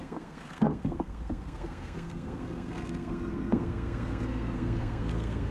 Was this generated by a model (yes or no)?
yes